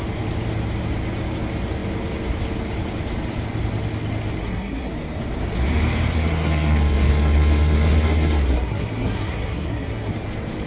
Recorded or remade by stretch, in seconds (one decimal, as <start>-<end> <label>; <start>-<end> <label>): 0.0-4.4 recorded; 4.4-4.9 remade; 4.9-6.1 recorded; 6.1-10.1 remade; 10.1-10.7 recorded